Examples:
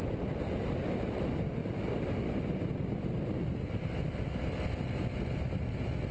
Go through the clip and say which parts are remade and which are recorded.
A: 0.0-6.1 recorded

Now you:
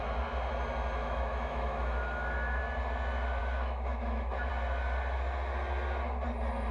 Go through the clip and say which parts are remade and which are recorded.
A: 0.0-1.0 recorded; 1.0-2.6 remade; 2.6-3.4 recorded; 3.4-4.5 remade; 4.5-6.7 recorded

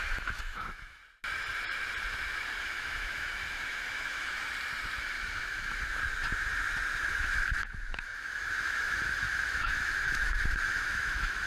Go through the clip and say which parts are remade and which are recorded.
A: 0.0-1.0 remade; 1.0-2.6 recorded; 2.6-4.4 remade; 4.4-5.0 recorded; 5.0-6.0 remade; 6.0-7.0 recorded; 7.0-11.5 remade

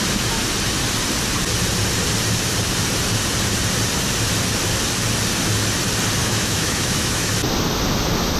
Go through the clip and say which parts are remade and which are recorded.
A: 0.0-6.2 recorded; 6.2-7.3 remade; 7.3-8.4 recorded

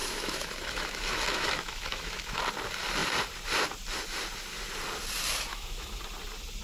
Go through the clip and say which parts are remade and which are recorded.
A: 0.0-2.4 remade; 2.4-5.5 recorded; 5.5-6.0 remade; 6.0-6.6 recorded

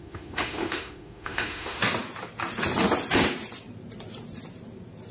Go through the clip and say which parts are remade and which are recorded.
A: 0.0-1.8 remade; 1.8-5.1 recorded

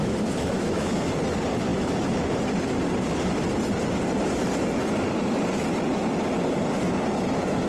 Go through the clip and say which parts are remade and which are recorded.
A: 0.0-1.0 remade; 1.0-7.7 recorded

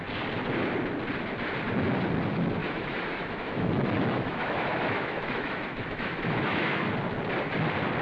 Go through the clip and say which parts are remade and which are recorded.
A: 0.0-2.6 recorded; 2.6-6.9 remade; 6.9-8.0 recorded